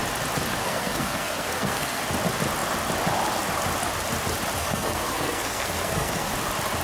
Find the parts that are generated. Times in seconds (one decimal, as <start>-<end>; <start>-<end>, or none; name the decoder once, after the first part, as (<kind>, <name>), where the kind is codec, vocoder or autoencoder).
0.6-2.0 (codec, SNAC); 4.6-6.3